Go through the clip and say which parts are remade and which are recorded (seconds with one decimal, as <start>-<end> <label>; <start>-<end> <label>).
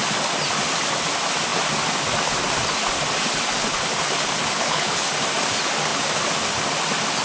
0.0-4.6 recorded; 4.6-5.1 remade; 5.1-7.2 recorded